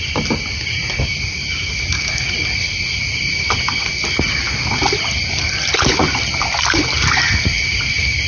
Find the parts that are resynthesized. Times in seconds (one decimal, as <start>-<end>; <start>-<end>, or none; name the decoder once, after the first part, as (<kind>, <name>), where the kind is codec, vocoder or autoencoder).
none